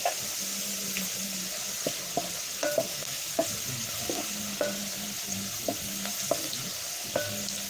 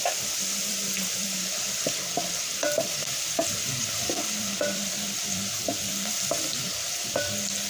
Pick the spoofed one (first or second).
second